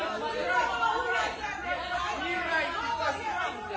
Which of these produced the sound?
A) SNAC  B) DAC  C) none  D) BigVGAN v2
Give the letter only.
C